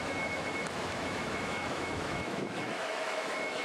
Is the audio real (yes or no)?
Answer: no